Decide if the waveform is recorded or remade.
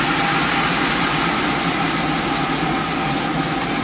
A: recorded